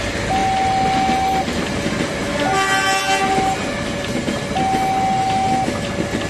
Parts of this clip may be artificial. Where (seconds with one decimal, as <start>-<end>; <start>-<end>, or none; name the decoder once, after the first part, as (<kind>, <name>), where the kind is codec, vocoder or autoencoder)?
none